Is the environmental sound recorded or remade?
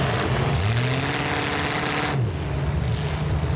recorded